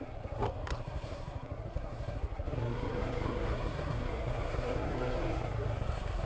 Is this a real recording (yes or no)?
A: no